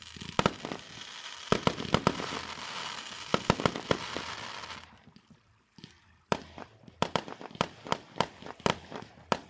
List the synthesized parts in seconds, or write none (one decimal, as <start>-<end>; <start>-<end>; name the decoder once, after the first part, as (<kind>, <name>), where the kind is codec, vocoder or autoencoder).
0.0-9.5 (vocoder, BigVGAN v2)